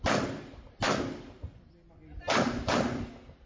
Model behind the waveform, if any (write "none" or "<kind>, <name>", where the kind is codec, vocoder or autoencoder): none